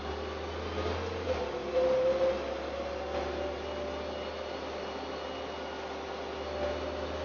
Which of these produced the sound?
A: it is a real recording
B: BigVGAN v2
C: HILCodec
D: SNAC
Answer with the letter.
A